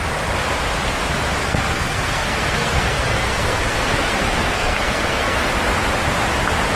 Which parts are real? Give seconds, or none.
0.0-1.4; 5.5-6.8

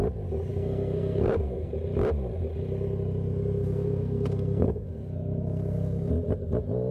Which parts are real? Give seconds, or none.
0.0-0.5; 1.7-3.6; 6.1-6.9